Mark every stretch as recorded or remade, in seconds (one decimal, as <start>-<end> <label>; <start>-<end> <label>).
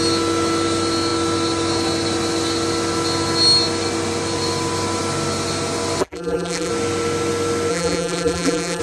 0.0-6.0 recorded; 6.0-6.7 remade; 6.7-7.7 recorded; 7.7-8.8 remade